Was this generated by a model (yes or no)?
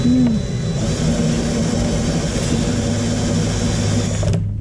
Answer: no